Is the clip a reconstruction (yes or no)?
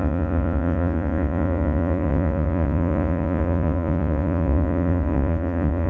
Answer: yes